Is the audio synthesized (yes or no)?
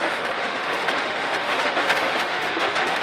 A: yes